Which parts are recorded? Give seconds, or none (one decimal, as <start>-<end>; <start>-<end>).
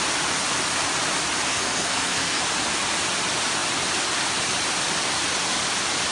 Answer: 0.0-1.5; 2.4-6.1